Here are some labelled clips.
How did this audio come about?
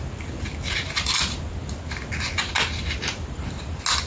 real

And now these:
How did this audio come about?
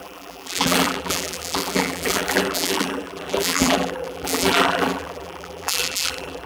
fake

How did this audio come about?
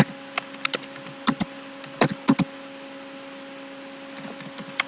real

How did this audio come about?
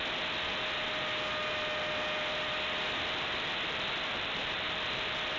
real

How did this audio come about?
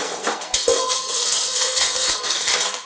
fake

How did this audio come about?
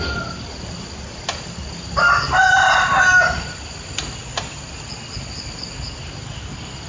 real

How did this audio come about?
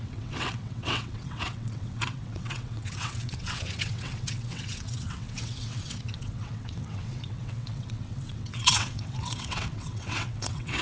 fake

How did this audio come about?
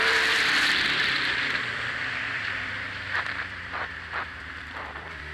fake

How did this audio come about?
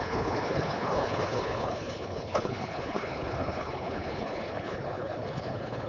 fake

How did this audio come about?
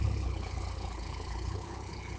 fake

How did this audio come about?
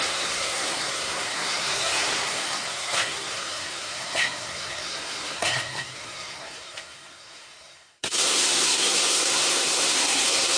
fake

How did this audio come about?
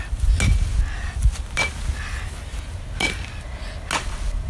real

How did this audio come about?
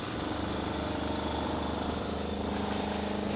real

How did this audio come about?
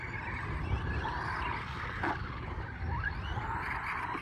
real